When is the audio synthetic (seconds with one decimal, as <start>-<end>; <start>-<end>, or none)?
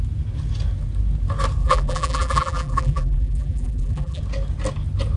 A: 1.6-4.2